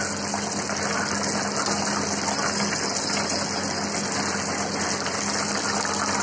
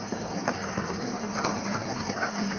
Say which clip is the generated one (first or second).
second